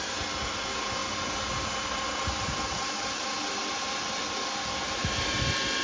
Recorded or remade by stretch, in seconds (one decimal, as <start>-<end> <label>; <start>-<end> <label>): 0.0-5.8 recorded